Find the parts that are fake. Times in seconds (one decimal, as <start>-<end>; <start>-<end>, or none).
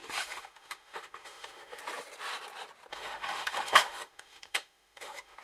0.0-1.8; 2.9-5.4